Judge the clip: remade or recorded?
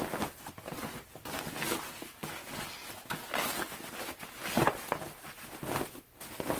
recorded